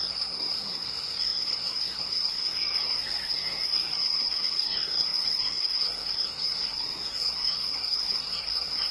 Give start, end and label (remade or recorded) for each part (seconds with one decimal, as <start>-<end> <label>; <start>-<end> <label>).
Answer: 0.0-8.9 remade